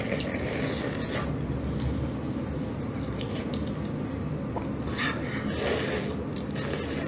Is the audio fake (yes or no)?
no